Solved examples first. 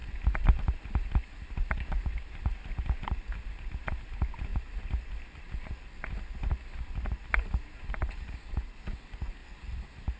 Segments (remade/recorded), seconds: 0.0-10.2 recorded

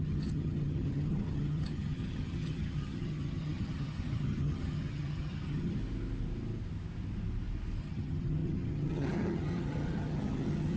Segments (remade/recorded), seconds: 0.0-5.8 remade; 5.8-7.8 recorded; 7.8-10.8 remade